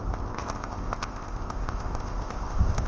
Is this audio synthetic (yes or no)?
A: yes